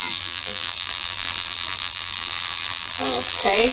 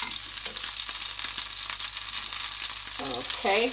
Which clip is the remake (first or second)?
first